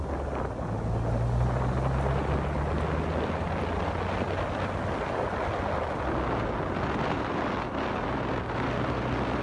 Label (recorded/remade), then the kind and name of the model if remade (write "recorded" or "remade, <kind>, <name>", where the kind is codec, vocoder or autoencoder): recorded